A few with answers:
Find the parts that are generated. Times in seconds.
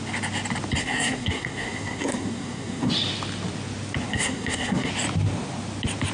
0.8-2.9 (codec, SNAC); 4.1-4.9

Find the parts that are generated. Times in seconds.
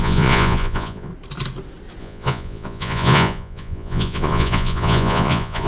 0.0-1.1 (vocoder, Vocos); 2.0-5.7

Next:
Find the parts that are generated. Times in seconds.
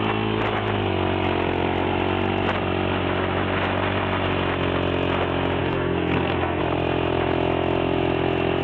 5.6-6.6 (codec, SNAC)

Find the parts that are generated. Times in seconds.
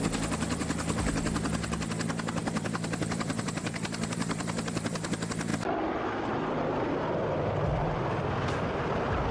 2.4-5.1 (vocoder, BigVGAN v2)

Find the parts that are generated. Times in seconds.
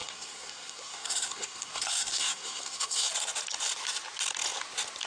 0.0-3.1 (codec, SNAC)